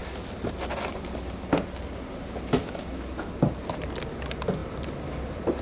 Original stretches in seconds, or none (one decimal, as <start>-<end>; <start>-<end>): 0.0-4.6